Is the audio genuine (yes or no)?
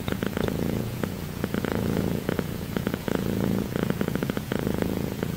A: no